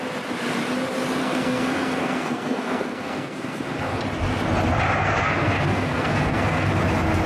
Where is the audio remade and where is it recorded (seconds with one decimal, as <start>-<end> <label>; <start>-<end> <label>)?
0.0-1.2 recorded; 1.2-4.0 remade; 4.0-5.0 recorded; 5.0-6.8 remade; 6.8-7.3 recorded